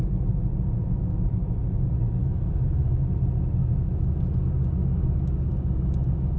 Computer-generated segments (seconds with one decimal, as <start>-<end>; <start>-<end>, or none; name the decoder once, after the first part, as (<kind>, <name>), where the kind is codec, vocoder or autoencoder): 2.2-3.0 (autoencoder, DAC-VAE); 3.6-4.1